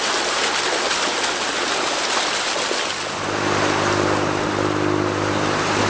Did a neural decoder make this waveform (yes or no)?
no